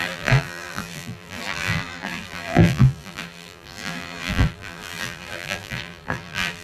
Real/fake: fake